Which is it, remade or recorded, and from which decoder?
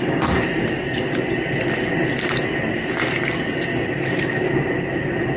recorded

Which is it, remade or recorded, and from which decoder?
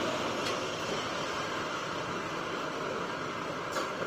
recorded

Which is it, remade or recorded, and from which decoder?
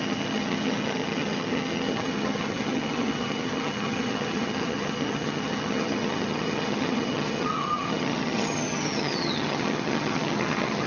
remade, vocoder, HiFi-GAN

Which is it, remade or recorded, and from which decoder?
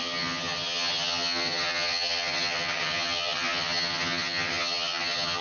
remade, vocoder, HiFi-GAN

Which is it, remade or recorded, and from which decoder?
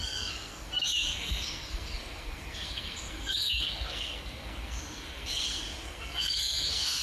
remade, codec, SNAC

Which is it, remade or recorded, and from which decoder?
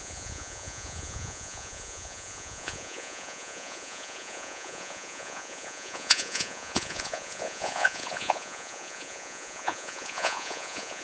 remade, vocoder, Vocos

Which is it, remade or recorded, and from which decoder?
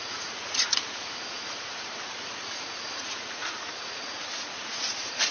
remade, vocoder, Vocos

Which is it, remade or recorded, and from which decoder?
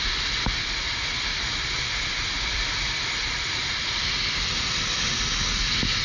recorded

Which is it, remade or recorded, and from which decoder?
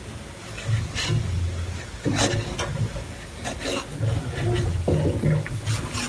recorded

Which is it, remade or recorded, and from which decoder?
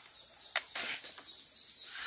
recorded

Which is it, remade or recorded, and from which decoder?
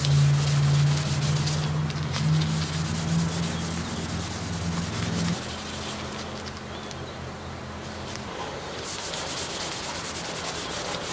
recorded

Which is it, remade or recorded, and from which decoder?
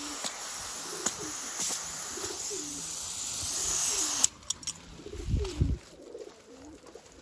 recorded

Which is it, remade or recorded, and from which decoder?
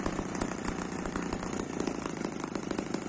recorded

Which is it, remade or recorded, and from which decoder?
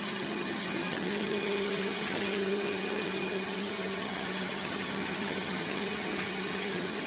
remade, vocoder, HiFi-GAN